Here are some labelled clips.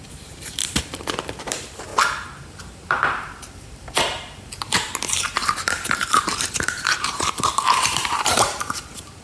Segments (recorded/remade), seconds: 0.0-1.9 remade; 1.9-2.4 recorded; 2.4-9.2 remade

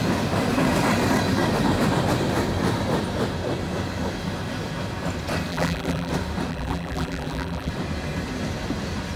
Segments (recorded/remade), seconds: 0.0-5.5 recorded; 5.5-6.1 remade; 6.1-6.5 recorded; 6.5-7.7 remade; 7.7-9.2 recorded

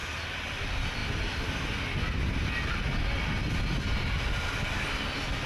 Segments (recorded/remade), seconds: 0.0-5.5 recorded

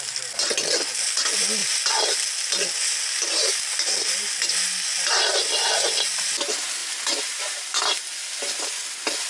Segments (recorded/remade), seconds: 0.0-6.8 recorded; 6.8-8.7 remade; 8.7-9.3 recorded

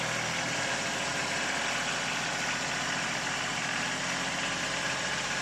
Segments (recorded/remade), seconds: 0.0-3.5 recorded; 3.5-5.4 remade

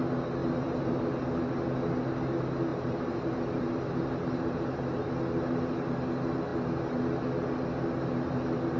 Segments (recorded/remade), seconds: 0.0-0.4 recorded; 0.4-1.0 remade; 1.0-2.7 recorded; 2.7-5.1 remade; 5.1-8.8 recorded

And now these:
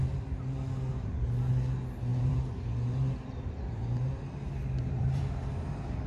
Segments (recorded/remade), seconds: 0.0-2.1 recorded; 2.1-4.2 remade; 4.2-4.8 recorded; 4.8-6.1 remade

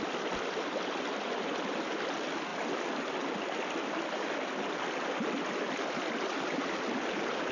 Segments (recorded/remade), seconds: 0.0-7.5 recorded